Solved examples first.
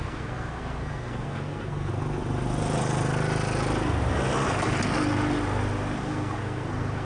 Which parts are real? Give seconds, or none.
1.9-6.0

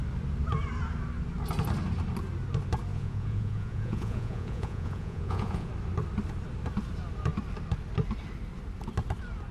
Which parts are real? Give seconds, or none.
0.0-2.9; 5.7-9.5

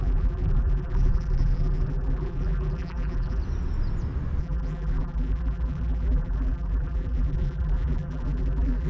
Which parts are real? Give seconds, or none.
3.4-4.4